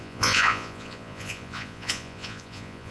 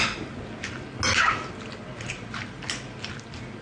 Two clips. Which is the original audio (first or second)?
second